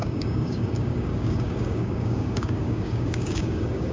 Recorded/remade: remade